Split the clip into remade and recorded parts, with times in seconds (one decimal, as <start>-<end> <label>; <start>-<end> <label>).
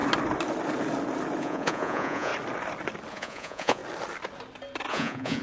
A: 0.0-1.4 recorded; 1.4-2.3 remade; 2.3-3.1 recorded; 3.1-3.8 remade; 3.8-4.9 recorded; 4.9-5.4 remade